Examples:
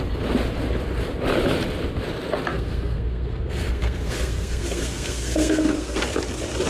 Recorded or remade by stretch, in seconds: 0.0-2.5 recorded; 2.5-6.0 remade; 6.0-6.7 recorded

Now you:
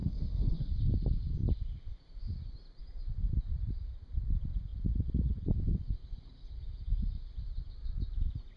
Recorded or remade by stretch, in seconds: 0.0-0.7 remade; 0.7-8.6 recorded

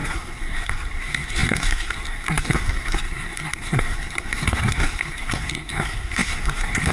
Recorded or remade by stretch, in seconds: 0.0-6.9 remade

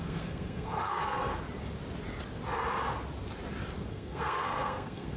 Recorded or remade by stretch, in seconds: 0.0-1.3 remade; 1.3-3.9 recorded; 3.9-5.2 remade

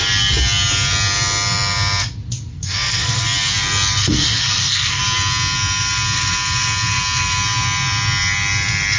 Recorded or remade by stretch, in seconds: 0.0-2.5 recorded; 2.5-3.2 remade; 3.2-4.0 recorded; 4.0-5.0 remade; 5.0-9.0 recorded

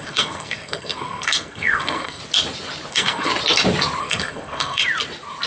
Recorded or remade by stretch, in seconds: 0.0-2.2 remade; 2.2-2.9 recorded; 2.9-3.3 remade; 3.3-4.0 recorded; 4.0-4.8 remade; 4.8-5.5 recorded